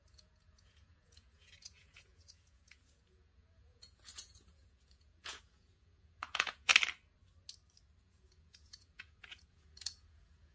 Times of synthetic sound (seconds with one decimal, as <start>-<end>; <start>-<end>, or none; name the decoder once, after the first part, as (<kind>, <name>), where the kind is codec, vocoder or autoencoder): 0.0-6.7 (vocoder, Vocos); 8.0-10.5